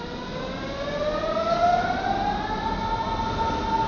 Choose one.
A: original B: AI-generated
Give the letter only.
A